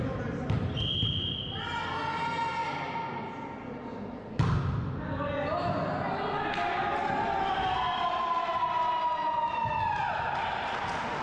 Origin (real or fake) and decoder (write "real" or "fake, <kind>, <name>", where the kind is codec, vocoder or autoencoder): real